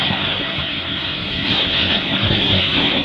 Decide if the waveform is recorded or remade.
remade